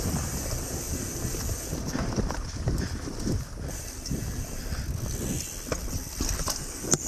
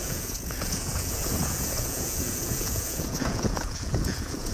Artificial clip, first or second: second